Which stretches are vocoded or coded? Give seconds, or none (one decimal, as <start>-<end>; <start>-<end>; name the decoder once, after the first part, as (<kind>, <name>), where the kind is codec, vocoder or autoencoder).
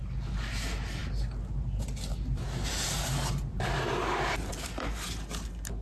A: none